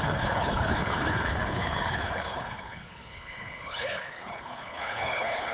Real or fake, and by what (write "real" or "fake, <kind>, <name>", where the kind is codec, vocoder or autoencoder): fake, codec, HILCodec